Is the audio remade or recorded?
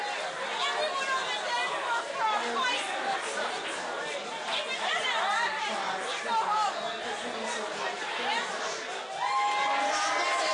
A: recorded